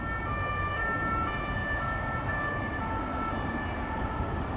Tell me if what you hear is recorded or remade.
recorded